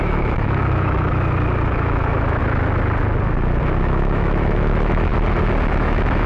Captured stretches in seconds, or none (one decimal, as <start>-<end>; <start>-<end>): 1.1-1.7; 2.4-3.6; 5.1-5.7